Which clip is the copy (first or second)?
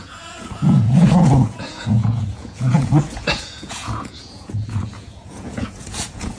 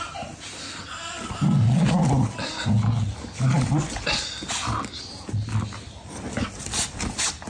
first